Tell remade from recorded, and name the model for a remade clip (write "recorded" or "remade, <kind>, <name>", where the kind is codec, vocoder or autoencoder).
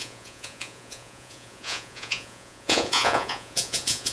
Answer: remade, vocoder, Vocos